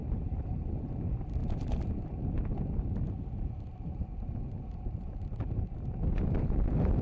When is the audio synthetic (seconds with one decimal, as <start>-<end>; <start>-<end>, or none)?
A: none